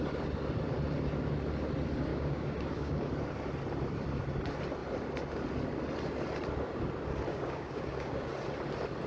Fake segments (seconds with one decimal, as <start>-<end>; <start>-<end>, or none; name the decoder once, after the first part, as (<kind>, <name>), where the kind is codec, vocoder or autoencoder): 2.1-3.1 (codec, DAC); 7.3-8.3